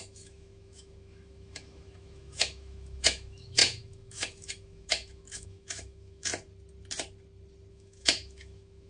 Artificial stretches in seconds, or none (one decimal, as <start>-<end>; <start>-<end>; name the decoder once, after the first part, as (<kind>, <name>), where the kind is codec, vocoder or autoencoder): 0.0-6.3 (autoencoder, DAC-VAE); 7.7-8.9